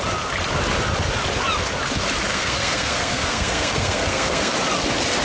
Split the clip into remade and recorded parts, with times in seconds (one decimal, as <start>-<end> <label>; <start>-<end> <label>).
0.0-2.3 recorded; 2.3-4.5 remade; 4.5-5.2 recorded

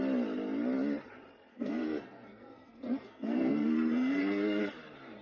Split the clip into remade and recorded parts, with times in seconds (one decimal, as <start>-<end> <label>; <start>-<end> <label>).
0.0-1.5 recorded; 1.5-4.6 remade; 4.6-5.2 recorded

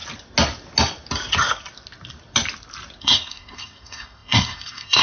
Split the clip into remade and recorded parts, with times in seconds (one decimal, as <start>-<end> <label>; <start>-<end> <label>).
0.0-3.0 recorded; 3.0-5.0 remade

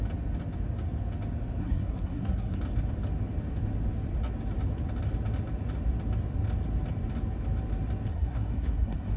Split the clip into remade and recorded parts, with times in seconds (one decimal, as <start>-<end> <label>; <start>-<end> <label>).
0.0-1.6 recorded; 1.6-2.6 remade; 2.6-8.1 recorded; 8.1-9.2 remade

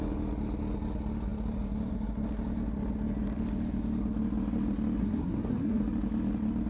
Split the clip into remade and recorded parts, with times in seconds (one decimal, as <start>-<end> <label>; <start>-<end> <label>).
0.0-5.0 recorded; 5.0-5.8 remade; 5.8-6.7 recorded

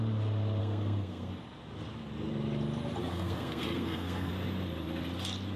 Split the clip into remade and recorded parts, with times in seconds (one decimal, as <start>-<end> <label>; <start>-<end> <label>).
0.0-0.6 recorded; 0.6-1.3 remade; 1.3-3.0 recorded; 3.0-4.3 remade; 4.3-5.6 recorded

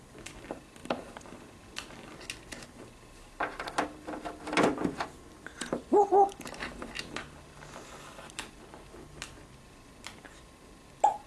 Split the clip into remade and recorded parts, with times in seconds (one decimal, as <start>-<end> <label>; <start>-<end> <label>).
0.0-11.3 recorded